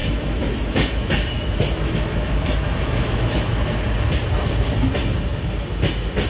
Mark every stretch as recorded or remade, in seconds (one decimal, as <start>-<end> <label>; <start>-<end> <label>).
0.0-3.8 remade; 3.8-6.3 recorded